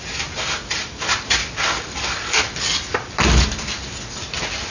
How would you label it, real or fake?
real